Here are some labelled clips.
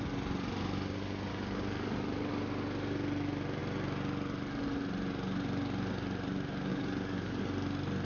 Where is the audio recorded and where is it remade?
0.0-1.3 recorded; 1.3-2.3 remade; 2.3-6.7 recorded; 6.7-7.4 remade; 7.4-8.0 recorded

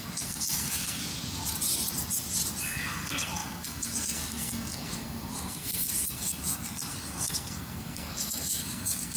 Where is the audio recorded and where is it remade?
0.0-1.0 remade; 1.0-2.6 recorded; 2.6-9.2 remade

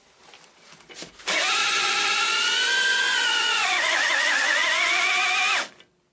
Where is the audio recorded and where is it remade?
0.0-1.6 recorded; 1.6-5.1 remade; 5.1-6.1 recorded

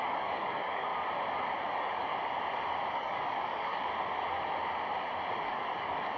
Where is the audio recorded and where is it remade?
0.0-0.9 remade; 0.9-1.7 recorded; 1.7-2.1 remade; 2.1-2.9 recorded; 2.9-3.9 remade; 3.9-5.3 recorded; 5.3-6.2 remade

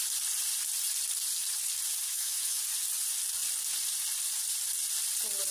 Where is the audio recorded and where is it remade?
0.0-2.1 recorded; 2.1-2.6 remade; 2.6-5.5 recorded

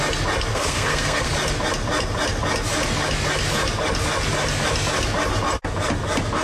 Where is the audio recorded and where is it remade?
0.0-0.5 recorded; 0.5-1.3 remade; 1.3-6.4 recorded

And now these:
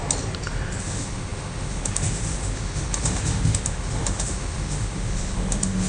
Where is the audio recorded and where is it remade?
0.0-0.8 recorded; 0.8-5.9 remade

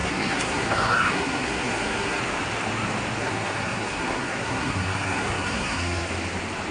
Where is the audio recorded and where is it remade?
0.0-2.2 remade; 2.2-3.2 recorded; 3.2-6.1 remade; 6.1-6.7 recorded